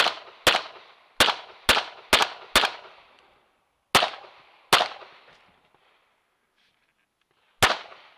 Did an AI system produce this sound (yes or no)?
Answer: no